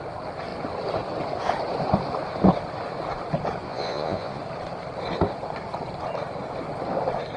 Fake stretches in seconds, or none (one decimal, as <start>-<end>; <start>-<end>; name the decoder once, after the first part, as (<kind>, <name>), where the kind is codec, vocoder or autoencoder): 3.6-4.4 (vocoder, Vocos)